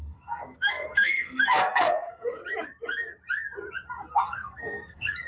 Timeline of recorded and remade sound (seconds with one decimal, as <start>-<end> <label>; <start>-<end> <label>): 0.0-2.4 remade; 2.4-4.1 recorded; 4.1-5.3 remade